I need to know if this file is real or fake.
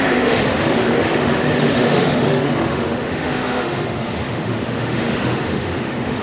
fake